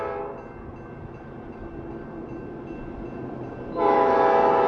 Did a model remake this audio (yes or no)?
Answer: no